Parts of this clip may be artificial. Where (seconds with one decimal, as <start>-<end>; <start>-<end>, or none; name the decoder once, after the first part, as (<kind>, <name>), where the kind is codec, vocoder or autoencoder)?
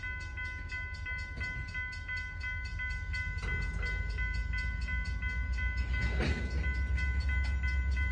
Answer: none